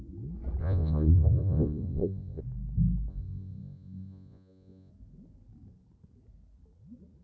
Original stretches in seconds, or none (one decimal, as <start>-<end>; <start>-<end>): 0.0-0.6; 2.4-3.1; 4.9-7.2